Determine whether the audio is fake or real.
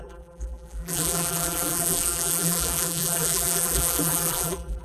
fake